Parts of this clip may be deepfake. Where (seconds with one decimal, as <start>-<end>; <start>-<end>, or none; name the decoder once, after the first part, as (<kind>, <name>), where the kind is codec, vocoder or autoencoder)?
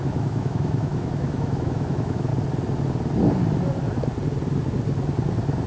0.0-2.3 (autoencoder, DAC-VAE)